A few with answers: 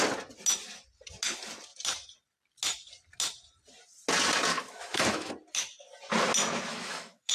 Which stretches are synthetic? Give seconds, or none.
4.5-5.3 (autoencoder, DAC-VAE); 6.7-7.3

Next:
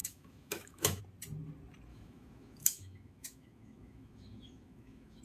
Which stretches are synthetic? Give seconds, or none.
0.0-1.0 (autoencoder, DAC-VAE); 1.9-5.2

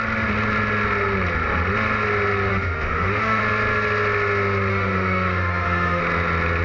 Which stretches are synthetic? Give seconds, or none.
2.5-3.4 (autoencoder, DAC-VAE); 4.7-6.0

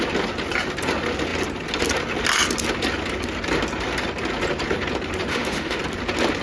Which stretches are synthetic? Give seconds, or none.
5.3-5.8 (autoencoder, DAC-VAE)

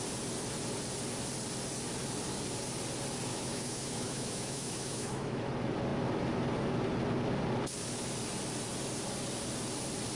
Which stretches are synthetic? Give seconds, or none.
3.3-5.5 (autoencoder, DAC-VAE)